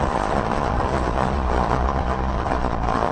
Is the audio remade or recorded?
remade